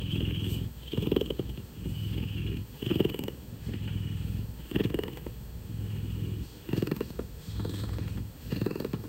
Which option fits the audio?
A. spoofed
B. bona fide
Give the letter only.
A